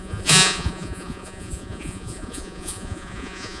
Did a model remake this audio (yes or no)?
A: yes